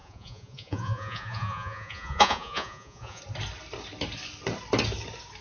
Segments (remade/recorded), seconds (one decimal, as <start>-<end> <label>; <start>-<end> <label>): 0.0-3.2 remade; 3.2-5.4 recorded